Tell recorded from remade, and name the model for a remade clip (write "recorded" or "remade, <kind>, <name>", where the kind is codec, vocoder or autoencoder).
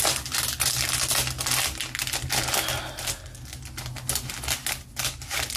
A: recorded